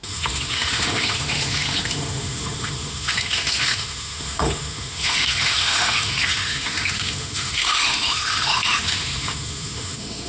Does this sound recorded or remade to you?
remade